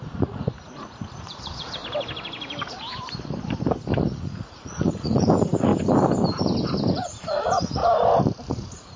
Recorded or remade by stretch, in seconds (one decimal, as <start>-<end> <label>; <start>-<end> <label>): 0.0-1.8 remade; 1.8-3.9 recorded; 3.9-5.7 remade; 5.7-6.9 recorded; 6.9-7.8 remade; 7.8-8.5 recorded; 8.5-9.0 remade